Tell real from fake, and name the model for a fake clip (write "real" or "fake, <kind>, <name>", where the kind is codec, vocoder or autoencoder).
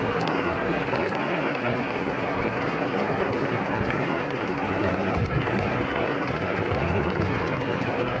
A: fake, codec, SNAC